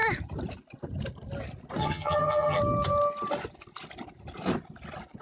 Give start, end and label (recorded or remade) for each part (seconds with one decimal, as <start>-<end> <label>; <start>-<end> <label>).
0.0-1.8 recorded; 1.8-2.6 remade; 2.6-5.2 recorded